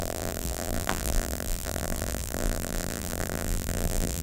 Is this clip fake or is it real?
fake